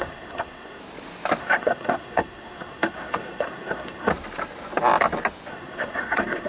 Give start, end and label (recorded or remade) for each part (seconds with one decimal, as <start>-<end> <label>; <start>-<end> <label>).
0.0-0.8 remade; 0.8-1.4 recorded; 1.4-4.1 remade; 4.1-5.5 recorded; 5.5-6.5 remade